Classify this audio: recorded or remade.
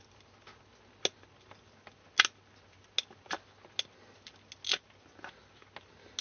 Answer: recorded